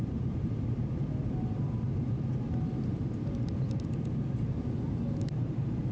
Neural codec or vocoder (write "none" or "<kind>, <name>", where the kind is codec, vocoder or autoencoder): vocoder, BigVGAN v2